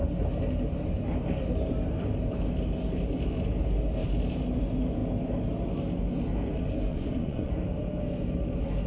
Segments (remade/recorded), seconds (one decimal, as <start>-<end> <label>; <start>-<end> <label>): 0.0-6.9 recorded; 6.9-7.5 remade; 7.5-8.9 recorded